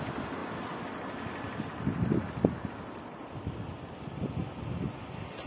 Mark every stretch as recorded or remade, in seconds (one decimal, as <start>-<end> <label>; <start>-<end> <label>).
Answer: 0.0-5.5 recorded